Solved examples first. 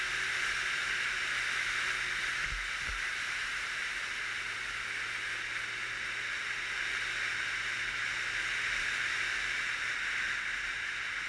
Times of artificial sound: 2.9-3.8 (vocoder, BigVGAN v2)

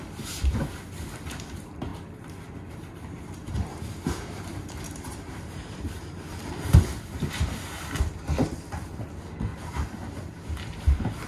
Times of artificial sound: 3.7-6.8 (vocoder, BigVGAN v2); 9.5-10.2

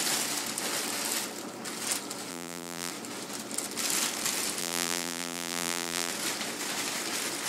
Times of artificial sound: 2.3-2.9 (vocoder, BigVGAN v2); 4.6-6.1